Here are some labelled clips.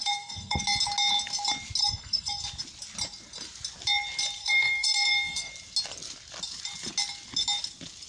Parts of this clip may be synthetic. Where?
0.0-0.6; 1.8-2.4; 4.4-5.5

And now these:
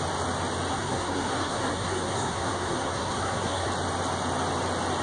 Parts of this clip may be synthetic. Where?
0.7-3.7

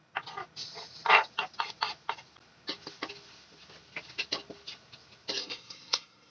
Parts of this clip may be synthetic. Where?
5.4-6.3

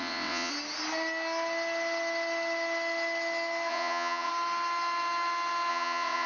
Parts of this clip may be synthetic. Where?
0.0-0.5; 3.7-4.3; 5.7-6.3

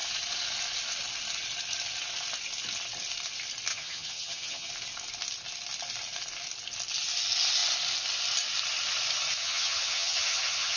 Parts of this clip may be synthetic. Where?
3.7-4.7; 9.4-10.8

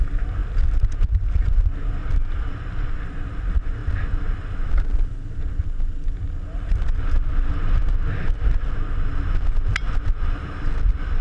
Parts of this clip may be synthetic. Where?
none

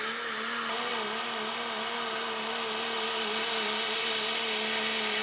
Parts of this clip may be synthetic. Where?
none